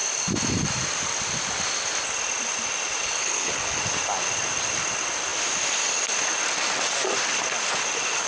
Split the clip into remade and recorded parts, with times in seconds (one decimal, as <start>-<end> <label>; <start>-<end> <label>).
0.0-3.2 recorded; 3.2-3.8 remade; 3.8-8.3 recorded